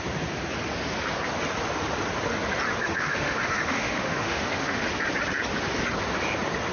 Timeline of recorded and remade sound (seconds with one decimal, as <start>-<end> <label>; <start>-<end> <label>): 0.0-2.8 recorded; 2.8-4.9 remade; 4.9-6.7 recorded